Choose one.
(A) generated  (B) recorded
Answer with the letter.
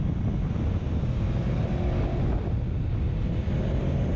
B